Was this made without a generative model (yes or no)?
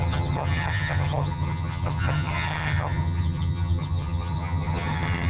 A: no